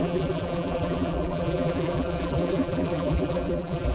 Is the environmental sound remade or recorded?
remade